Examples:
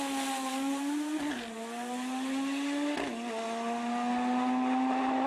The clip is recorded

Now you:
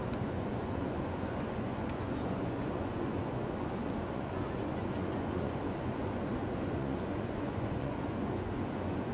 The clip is remade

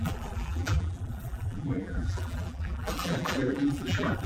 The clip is remade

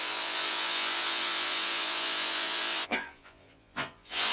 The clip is remade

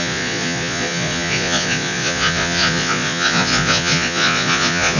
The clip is remade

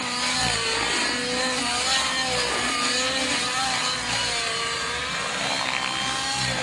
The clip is recorded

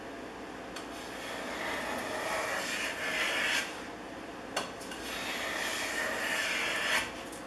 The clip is recorded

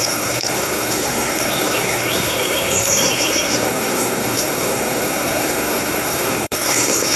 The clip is remade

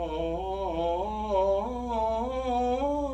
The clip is recorded